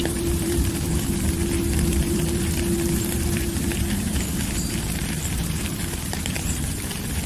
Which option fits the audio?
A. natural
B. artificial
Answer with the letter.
B